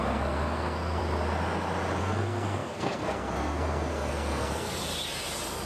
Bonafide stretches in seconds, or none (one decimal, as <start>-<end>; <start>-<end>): 1.0-2.0; 4.8-5.7